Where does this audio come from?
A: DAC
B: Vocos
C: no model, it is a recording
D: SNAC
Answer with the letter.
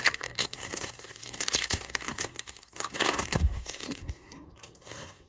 D